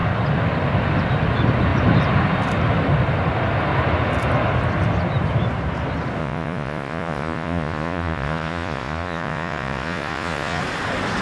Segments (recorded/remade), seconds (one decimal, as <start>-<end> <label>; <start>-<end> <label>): 0.0-6.2 recorded; 6.2-10.6 remade; 10.6-11.2 recorded